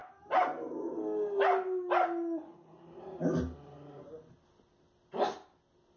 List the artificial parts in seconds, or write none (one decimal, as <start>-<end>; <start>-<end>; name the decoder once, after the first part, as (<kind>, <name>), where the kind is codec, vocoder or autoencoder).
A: none